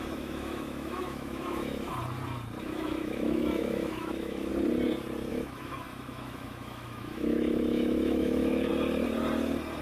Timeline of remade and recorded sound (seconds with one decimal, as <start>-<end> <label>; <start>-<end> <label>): 0.0-1.9 remade; 1.9-2.6 recorded; 2.6-4.5 remade; 4.5-5.3 recorded; 5.3-8.7 remade; 8.7-9.8 recorded